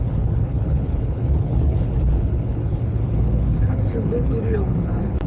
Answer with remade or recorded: remade